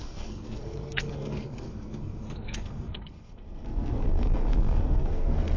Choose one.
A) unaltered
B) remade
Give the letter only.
B